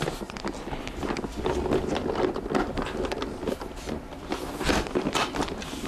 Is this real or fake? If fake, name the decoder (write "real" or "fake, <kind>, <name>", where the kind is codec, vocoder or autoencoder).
real